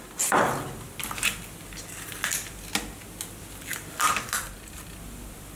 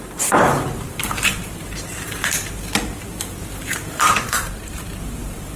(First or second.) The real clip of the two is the first